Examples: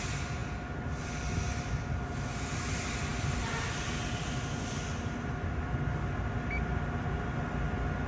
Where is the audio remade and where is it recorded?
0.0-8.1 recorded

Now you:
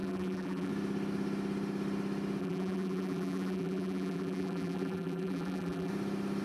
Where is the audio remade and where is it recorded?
0.0-0.7 remade; 0.7-2.4 recorded; 2.4-5.9 remade; 5.9-6.4 recorded